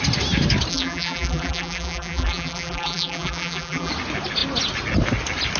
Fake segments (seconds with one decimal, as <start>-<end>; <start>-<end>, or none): 0.7-3.9